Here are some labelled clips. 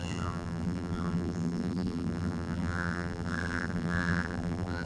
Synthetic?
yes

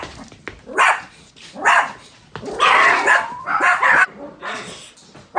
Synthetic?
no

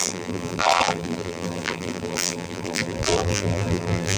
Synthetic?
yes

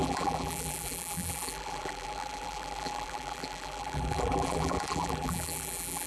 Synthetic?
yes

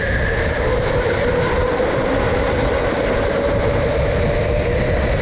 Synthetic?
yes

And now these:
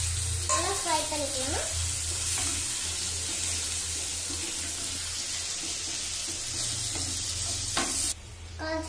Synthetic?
no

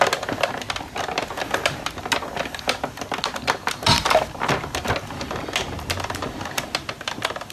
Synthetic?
no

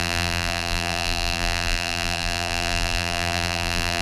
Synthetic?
yes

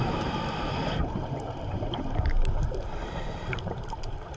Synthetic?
yes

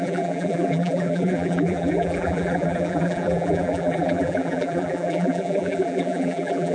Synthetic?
yes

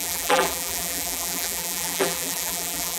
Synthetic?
yes